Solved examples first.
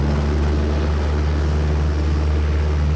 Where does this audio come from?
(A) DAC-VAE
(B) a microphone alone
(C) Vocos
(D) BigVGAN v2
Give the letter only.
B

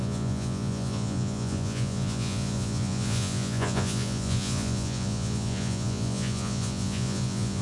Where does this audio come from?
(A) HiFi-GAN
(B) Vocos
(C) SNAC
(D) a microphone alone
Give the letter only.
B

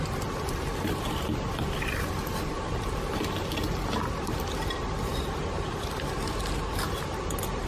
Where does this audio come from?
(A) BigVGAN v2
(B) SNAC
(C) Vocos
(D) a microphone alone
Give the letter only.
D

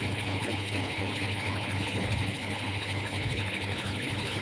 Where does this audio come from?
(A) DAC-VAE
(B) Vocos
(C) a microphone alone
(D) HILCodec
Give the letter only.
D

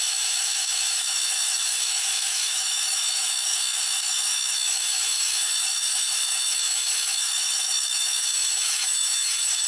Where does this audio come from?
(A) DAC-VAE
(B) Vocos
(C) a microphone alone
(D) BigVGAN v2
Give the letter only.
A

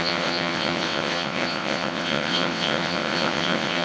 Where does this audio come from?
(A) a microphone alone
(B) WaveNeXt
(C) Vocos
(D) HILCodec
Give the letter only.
B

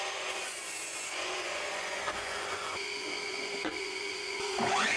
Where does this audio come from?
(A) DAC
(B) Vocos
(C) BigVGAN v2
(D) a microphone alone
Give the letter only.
B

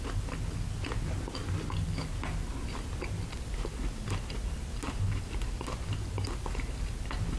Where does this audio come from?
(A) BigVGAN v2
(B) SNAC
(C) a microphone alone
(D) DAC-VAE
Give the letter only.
C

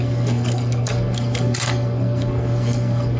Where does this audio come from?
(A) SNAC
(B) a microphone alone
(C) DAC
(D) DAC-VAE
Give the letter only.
A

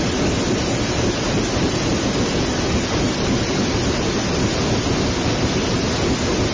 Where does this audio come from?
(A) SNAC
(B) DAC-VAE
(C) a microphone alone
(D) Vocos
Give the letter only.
C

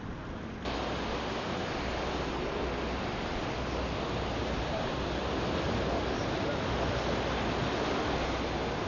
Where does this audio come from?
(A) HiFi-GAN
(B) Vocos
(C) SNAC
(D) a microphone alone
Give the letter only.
D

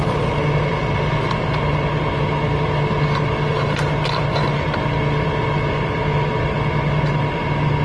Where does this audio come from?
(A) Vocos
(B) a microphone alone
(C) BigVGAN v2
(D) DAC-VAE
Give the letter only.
B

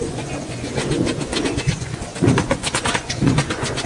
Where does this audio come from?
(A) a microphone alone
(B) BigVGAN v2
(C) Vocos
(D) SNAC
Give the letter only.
C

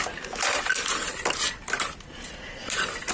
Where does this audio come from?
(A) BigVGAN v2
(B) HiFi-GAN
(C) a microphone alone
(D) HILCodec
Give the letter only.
C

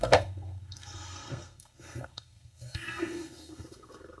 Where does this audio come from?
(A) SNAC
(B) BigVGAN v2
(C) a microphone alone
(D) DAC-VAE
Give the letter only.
A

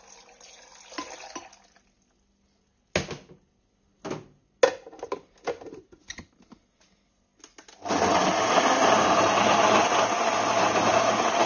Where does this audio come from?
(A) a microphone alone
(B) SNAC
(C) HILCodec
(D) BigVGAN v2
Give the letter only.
A